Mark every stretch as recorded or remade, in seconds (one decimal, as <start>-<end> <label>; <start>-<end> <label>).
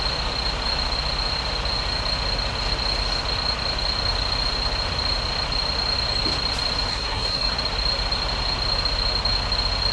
0.0-6.9 recorded; 6.9-7.5 remade; 7.5-9.9 recorded